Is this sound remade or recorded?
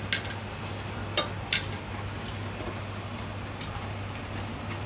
recorded